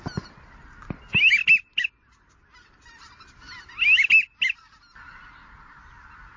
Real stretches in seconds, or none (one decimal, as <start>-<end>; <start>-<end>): 0.0-6.4